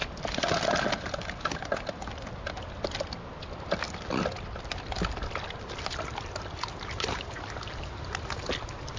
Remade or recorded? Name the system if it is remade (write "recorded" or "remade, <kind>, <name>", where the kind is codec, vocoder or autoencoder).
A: recorded